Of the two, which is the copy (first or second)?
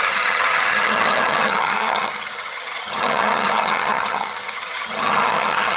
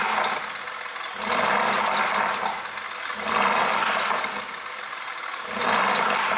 first